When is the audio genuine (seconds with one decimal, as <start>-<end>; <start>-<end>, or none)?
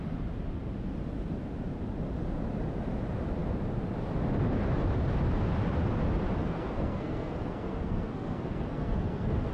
0.0-6.4